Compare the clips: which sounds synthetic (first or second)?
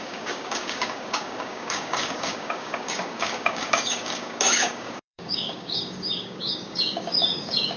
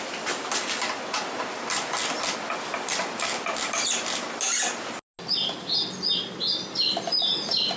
first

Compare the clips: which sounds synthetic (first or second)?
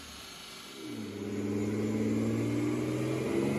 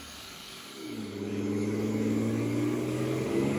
second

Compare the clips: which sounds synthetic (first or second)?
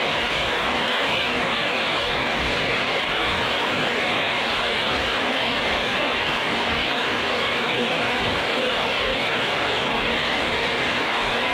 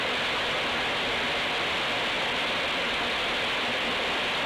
first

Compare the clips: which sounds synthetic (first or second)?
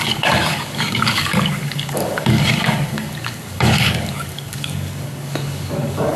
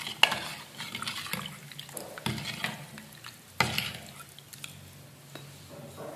first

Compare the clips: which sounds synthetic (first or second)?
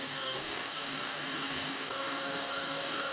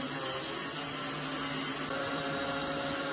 first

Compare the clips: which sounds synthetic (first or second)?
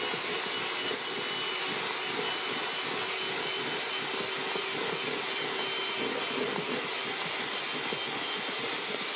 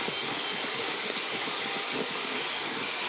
second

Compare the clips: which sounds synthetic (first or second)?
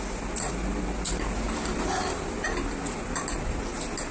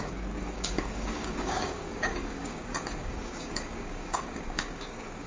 second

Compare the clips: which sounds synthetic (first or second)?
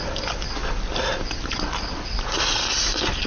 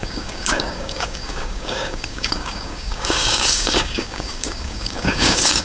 second